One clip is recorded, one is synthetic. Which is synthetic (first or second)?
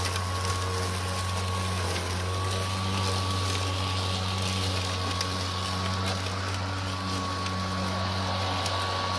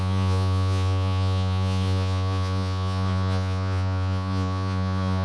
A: second